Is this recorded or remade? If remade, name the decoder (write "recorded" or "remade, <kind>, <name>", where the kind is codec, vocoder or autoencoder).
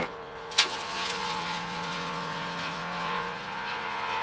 remade, vocoder, Vocos